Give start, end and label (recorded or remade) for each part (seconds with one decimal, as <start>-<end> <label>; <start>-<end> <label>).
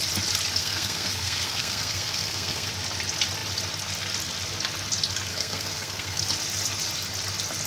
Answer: 0.0-0.6 recorded; 0.6-2.7 remade; 2.7-5.3 recorded; 5.3-6.2 remade; 6.2-7.7 recorded